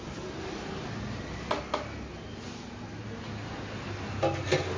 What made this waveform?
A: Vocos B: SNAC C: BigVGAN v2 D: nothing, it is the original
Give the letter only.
D